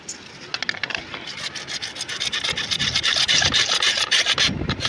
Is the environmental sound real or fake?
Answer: real